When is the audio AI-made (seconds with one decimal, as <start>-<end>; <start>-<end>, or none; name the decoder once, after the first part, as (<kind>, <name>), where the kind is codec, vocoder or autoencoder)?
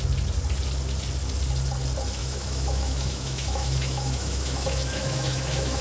2.2-5.8 (autoencoder, DAC-VAE)